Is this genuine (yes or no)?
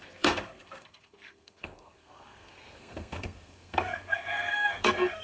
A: no